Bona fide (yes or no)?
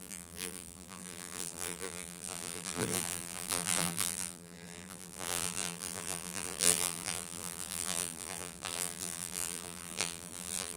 no